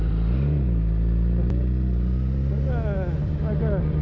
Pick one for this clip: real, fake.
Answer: real